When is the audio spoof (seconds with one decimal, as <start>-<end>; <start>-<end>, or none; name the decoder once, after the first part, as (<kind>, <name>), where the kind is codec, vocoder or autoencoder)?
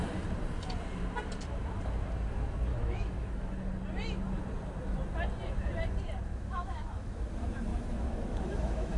2.7-3.6 (autoencoder, DAC-VAE); 6.3-7.3; 7.7-9.0